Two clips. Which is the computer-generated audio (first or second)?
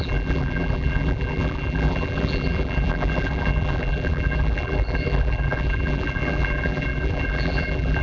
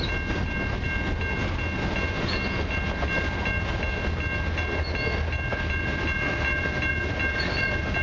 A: first